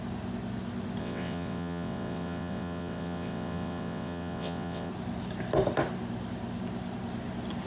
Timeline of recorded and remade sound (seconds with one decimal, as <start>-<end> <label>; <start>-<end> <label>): 0.0-1.0 recorded; 1.0-4.9 remade; 4.9-7.7 recorded